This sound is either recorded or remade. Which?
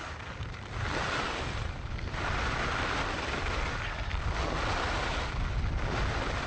recorded